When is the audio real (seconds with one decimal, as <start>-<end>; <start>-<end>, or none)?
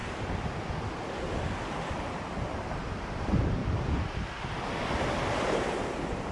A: 0.0-3.6; 4.4-6.3